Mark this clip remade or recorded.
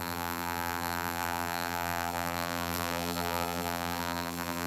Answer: remade